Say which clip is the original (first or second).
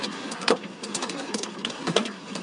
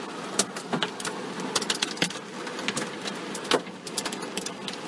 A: second